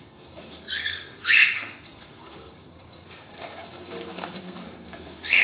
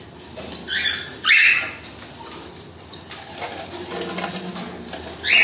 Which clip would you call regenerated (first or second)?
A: first